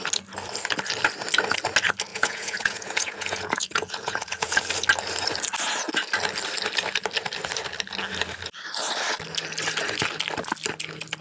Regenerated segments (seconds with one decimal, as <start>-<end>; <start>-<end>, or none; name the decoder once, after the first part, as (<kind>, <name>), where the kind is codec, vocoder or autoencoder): 2.1-4.6 (vocoder, Vocos)

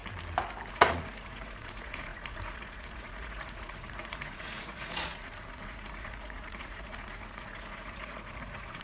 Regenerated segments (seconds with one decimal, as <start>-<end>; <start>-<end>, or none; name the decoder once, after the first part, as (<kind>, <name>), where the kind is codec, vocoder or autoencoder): 0.7-8.8 (vocoder, Vocos)

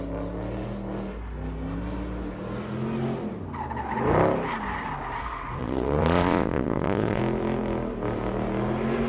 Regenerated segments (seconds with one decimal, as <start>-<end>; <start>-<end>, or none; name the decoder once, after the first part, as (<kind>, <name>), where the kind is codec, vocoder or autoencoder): 5.6-7.2 (vocoder, Vocos)

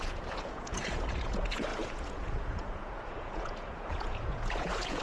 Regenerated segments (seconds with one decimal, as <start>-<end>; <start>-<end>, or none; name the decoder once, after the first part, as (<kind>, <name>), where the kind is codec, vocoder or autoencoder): 0.0-5.0 (vocoder, Vocos)

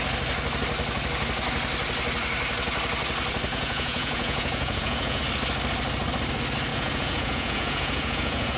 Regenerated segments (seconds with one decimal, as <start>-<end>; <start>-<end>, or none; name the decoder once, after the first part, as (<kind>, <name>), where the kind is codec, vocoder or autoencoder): 3.5-5.2 (vocoder, Vocos); 6.7-8.6

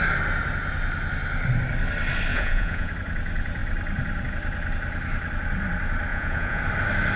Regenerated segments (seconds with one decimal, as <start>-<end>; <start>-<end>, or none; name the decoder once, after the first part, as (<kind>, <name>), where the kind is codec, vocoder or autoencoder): 2.3-2.9 (vocoder, Vocos); 6.1-6.6

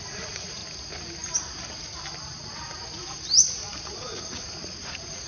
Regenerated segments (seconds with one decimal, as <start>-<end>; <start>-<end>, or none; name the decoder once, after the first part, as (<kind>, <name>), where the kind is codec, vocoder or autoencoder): 0.0-0.6 (vocoder, Vocos); 3.8-5.3

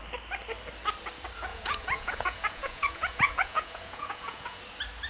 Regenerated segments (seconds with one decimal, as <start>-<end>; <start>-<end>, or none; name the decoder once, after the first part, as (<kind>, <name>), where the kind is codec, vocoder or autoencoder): 1.5-4.6 (vocoder, Vocos)